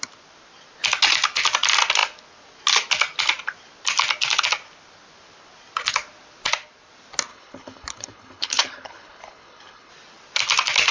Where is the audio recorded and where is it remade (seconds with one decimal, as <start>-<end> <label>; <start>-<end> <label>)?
0.0-7.3 recorded; 7.3-9.9 remade; 9.9-10.9 recorded